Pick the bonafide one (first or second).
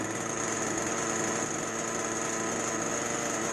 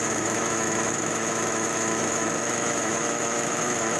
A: first